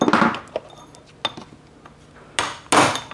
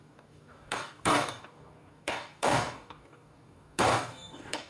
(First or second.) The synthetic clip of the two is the second